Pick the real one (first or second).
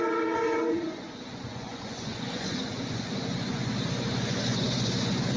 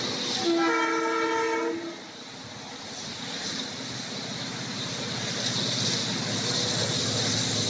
second